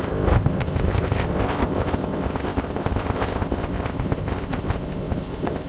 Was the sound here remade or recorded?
remade